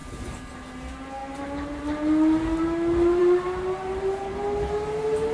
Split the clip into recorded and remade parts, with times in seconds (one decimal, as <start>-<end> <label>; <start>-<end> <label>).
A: 0.0-0.5 remade; 0.5-3.2 recorded; 3.2-4.3 remade; 4.3-5.3 recorded